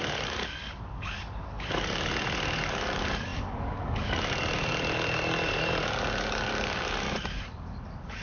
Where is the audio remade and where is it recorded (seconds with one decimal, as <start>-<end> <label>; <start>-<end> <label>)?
0.0-8.2 remade